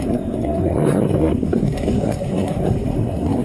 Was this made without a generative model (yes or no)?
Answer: no